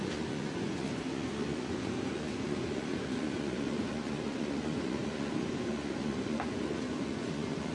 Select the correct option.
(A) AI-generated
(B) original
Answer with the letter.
A